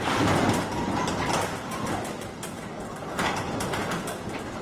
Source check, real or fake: real